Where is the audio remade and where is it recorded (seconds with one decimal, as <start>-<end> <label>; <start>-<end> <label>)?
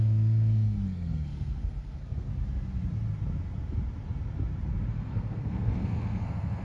0.0-2.3 remade; 2.3-4.9 recorded; 4.9-6.6 remade